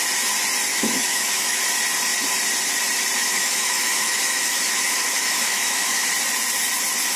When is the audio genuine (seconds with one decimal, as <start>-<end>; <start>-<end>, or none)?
0.0-0.7; 1.6-3.2; 6.1-7.2